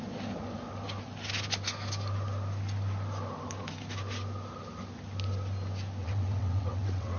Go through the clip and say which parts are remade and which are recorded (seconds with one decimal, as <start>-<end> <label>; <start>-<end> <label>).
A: 0.0-6.0 recorded; 6.0-7.2 remade